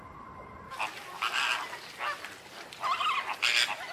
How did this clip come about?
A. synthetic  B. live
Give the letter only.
B